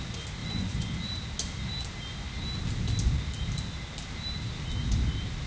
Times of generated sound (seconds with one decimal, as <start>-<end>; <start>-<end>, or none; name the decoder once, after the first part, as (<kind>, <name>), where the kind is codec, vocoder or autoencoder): 0.4-1.0 (vocoder, Vocos)